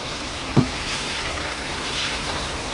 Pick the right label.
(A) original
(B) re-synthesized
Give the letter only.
B